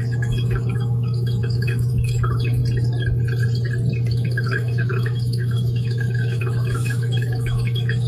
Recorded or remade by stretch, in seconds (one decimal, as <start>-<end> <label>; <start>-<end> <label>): 0.0-2.6 remade; 2.6-4.1 recorded; 4.1-8.1 remade